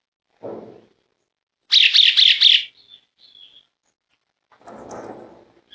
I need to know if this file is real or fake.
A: real